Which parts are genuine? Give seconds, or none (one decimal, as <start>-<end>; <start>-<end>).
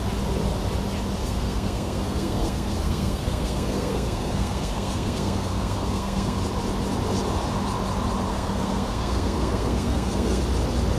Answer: 0.0-1.2; 6.4-8.3; 10.4-11.0